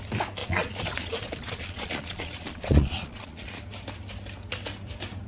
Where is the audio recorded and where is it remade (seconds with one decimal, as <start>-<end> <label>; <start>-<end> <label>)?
0.0-0.4 recorded; 0.4-3.6 remade; 3.6-5.3 recorded